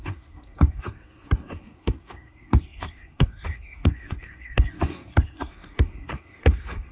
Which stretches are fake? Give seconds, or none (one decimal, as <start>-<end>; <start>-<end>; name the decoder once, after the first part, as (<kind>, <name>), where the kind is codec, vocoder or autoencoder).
0.0-6.9 (codec, SNAC)